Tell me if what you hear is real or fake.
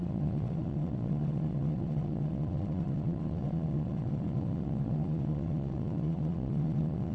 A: fake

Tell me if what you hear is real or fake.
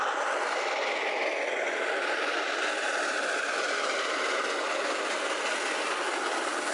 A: real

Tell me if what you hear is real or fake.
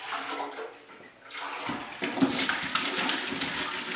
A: real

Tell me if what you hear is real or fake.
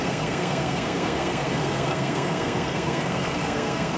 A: fake